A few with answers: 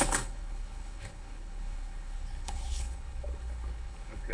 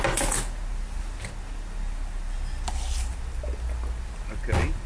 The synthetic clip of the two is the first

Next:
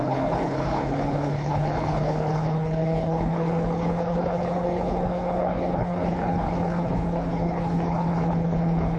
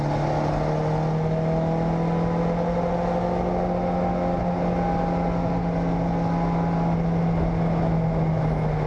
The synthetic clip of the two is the first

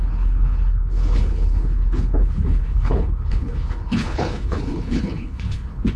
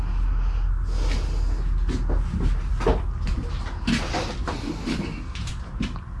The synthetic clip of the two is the first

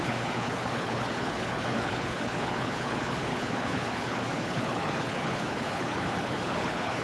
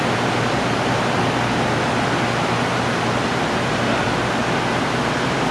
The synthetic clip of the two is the first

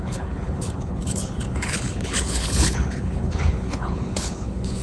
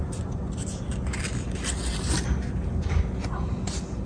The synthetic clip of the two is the first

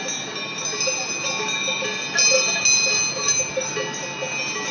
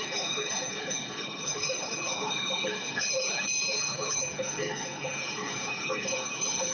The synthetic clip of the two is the second